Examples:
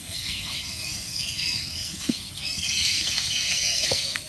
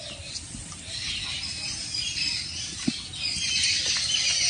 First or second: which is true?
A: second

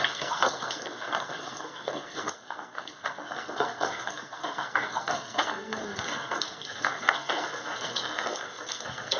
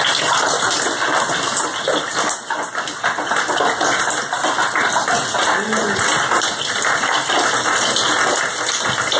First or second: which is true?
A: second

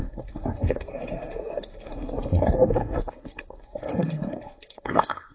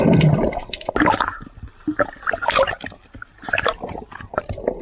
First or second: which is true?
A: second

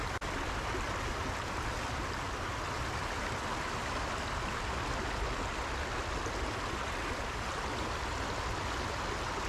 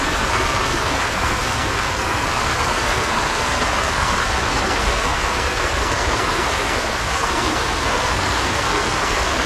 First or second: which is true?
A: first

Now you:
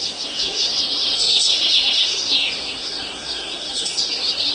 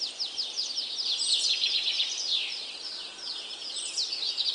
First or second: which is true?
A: second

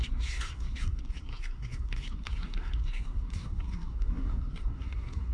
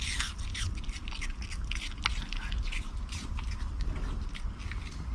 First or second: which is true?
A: second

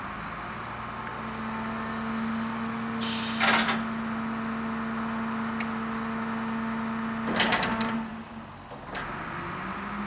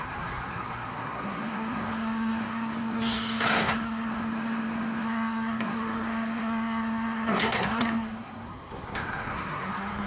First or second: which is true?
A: first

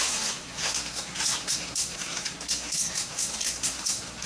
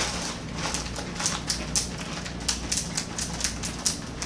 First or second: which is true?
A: second